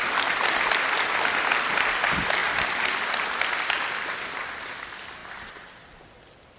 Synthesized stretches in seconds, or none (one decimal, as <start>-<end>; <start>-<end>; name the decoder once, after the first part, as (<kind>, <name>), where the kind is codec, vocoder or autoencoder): none